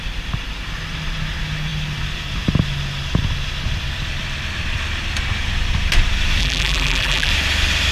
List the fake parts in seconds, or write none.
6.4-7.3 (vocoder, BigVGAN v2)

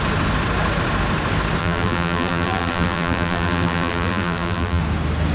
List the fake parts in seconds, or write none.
1.6-4.8 (vocoder, BigVGAN v2)

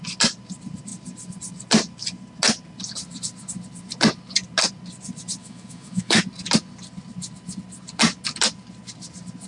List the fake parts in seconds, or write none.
5.4-6.2 (autoencoder, DAC-VAE)

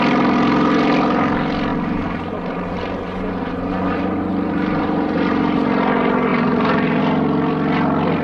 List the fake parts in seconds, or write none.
1.7-3.7 (vocoder, BigVGAN v2); 6.3-7.0

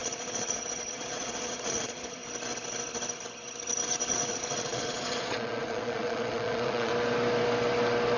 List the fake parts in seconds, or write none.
0.0-2.2 (vocoder, Vocos); 4.1-6.9

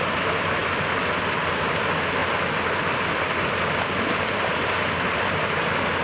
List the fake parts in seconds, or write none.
0.0-0.6 (vocoder, BigVGAN v2); 1.4-6.0

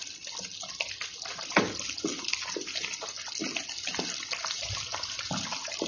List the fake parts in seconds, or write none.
none